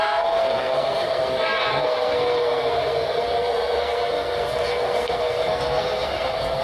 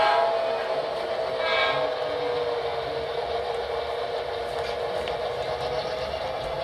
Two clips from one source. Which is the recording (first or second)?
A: second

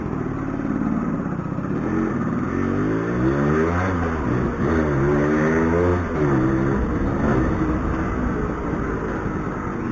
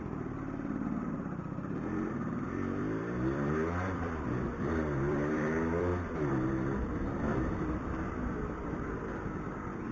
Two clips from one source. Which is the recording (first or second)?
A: first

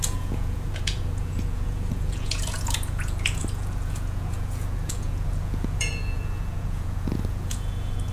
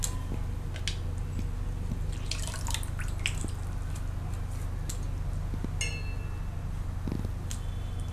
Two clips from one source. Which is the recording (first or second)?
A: second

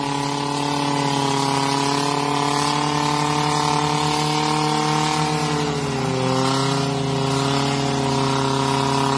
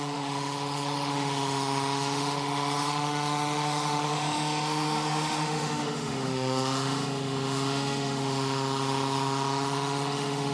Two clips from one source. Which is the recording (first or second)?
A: first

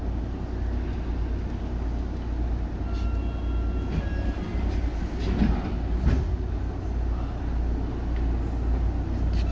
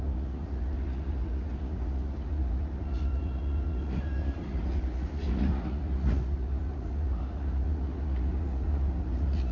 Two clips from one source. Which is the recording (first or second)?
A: first